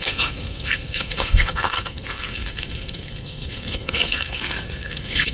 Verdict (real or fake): fake